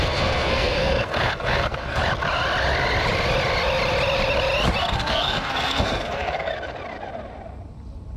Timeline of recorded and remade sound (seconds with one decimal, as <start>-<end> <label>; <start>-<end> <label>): 0.0-2.0 remade; 2.0-4.8 recorded; 4.8-6.5 remade; 6.5-8.2 recorded